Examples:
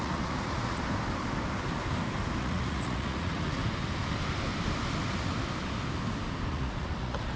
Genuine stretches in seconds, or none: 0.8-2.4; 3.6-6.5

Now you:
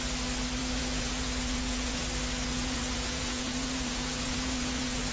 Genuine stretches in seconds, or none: 0.0-0.6; 2.0-2.5

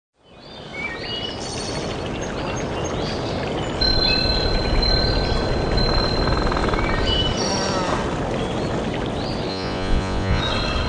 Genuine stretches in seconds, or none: 0.0-9.5; 10.4-10.9

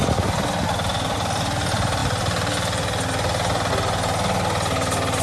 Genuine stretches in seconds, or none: 0.0-5.2

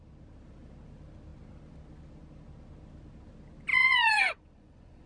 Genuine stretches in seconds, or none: 0.0-3.7

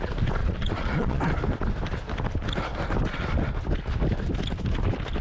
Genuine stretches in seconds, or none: 0.0-0.4; 1.2-5.2